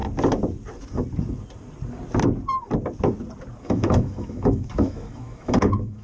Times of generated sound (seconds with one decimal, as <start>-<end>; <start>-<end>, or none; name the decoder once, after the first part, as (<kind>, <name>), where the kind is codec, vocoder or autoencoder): 3.6-6.0 (autoencoder, DAC-VAE)